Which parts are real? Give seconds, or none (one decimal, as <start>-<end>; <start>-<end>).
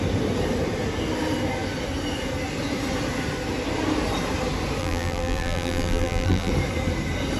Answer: 0.0-4.8; 6.5-7.4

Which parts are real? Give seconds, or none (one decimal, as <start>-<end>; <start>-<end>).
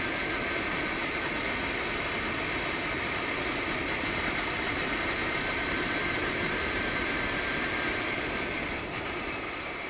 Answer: 1.0-2.6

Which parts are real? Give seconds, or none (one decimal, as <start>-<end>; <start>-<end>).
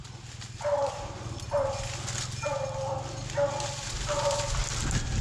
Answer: 0.0-5.2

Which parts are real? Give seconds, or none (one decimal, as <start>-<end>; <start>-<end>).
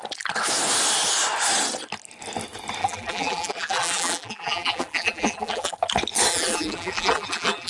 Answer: 0.0-2.8; 5.7-6.3